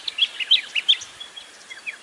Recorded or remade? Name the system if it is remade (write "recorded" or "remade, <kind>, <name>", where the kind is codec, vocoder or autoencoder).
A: recorded